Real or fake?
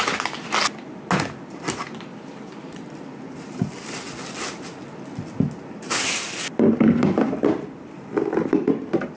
real